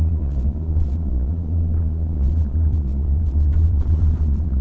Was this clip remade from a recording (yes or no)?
yes